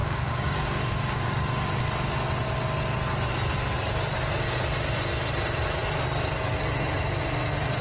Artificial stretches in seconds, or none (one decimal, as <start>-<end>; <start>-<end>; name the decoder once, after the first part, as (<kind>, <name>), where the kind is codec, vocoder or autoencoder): 0.0-1.8 (codec, DAC)